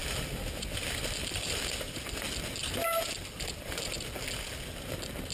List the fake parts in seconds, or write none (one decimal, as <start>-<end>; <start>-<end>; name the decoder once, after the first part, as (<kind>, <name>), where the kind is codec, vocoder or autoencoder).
none

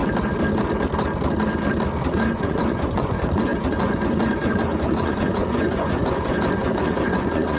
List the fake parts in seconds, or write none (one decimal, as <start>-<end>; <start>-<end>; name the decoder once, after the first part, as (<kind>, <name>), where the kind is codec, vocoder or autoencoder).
2.3-7.6 (vocoder, Vocos)

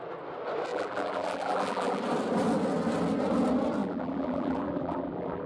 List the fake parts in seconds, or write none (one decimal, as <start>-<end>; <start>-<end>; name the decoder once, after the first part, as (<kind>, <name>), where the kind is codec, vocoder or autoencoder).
0.7-2.0 (vocoder, BigVGAN v2); 3.8-5.5

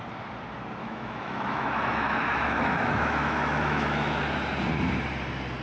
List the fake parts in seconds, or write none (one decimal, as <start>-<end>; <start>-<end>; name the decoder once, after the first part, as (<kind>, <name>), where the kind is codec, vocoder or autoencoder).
0.8-4.2 (autoencoder, DAC-VAE)